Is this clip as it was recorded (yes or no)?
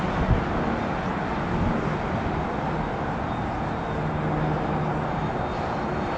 yes